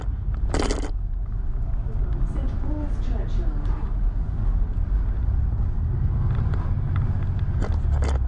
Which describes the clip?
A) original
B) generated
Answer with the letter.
A